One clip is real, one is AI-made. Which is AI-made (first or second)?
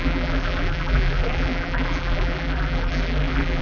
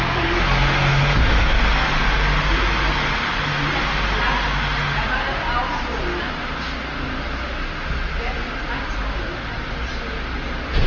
first